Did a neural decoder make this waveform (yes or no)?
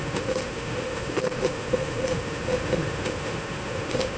yes